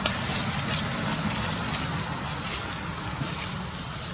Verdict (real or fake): real